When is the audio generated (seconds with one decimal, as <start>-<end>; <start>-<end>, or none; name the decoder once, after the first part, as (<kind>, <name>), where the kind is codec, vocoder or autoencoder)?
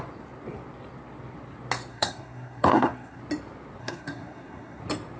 1.9-3.2 (codec, SNAC); 3.8-4.8